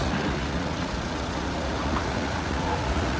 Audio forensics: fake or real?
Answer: fake